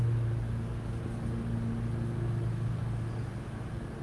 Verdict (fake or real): real